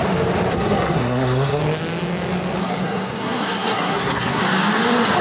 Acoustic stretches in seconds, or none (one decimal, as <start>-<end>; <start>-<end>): 0.0-0.5; 1.6-2.6; 4.4-5.2